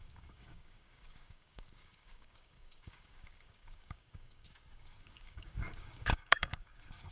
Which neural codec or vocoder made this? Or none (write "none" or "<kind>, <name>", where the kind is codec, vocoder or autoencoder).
codec, DAC